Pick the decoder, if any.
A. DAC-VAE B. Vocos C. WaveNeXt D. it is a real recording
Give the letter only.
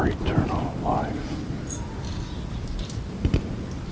D